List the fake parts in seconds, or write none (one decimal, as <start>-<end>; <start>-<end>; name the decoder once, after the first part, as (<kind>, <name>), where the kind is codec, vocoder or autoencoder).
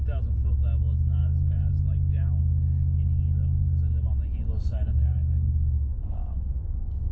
1.2-1.7 (codec, DAC); 4.7-7.1